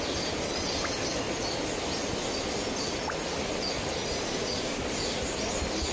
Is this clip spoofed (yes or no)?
no